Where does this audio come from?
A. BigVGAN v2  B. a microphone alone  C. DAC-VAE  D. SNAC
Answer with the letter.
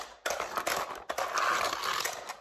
B